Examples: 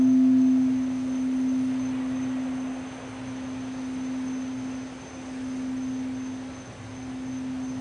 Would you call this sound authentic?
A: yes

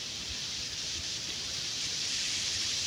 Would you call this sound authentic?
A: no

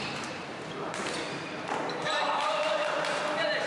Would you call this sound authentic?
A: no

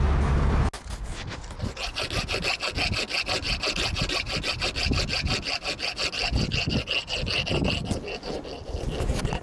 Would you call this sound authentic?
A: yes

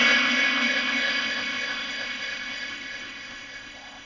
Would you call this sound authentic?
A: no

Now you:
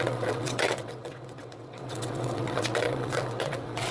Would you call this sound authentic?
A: no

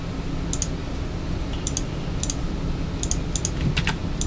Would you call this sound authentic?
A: yes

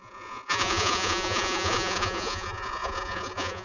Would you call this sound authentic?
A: no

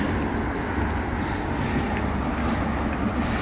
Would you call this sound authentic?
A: yes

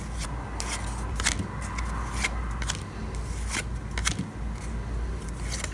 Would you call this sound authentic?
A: yes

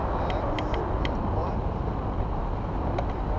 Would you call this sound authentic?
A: yes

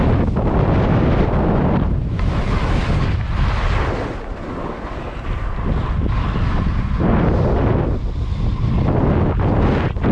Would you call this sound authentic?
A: yes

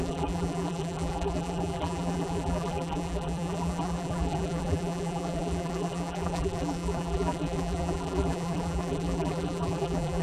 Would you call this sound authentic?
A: no